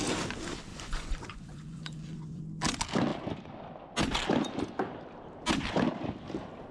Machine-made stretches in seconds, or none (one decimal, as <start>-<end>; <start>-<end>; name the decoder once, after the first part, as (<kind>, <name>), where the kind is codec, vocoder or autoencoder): 0.7-2.4 (vocoder, Vocos)